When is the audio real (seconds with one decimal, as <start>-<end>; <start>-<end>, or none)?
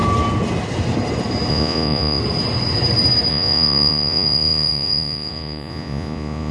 0.0-1.5; 2.2-3.3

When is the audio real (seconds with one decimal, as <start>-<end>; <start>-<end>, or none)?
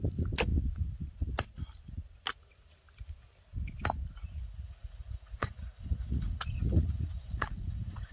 0.0-4.4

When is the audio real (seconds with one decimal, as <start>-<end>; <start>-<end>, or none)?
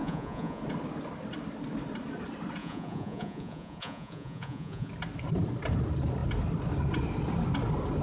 0.6-2.6; 4.9-8.0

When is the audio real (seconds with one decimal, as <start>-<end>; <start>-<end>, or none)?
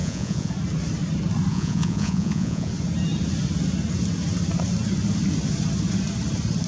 0.5-1.5; 2.7-6.7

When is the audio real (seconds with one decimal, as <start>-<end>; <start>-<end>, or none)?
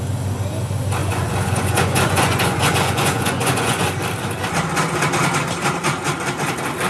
0.0-1.0; 3.9-6.9